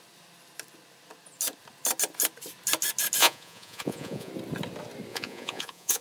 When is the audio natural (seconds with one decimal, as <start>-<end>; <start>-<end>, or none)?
0.0-3.2; 4.3-5.1